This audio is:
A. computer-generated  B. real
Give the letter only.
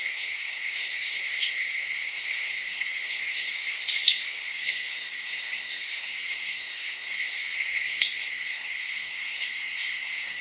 A